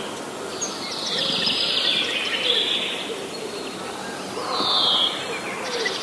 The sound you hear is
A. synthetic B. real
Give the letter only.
B